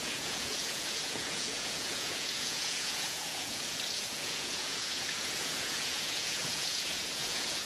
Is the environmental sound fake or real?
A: fake